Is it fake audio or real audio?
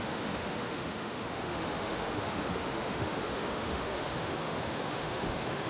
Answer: fake